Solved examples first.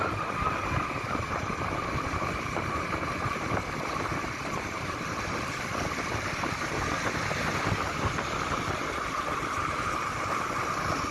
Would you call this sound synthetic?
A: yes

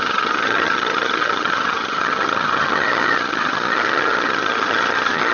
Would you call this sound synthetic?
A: yes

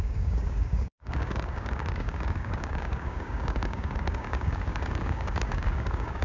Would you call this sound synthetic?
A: yes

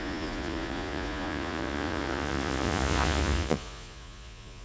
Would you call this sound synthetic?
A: yes